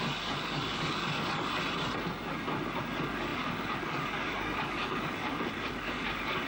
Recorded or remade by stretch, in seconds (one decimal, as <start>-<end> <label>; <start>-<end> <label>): 0.0-1.6 remade; 1.6-2.8 recorded; 2.8-6.5 remade